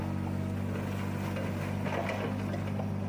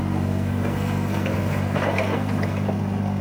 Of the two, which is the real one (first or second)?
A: first